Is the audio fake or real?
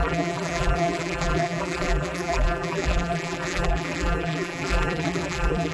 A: fake